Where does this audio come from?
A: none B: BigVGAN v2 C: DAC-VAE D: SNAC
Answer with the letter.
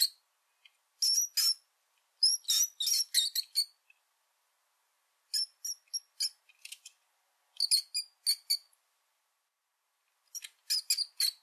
A